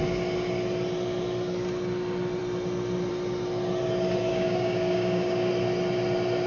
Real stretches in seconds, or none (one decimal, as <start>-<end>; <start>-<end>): 0.0-4.3; 5.5-6.5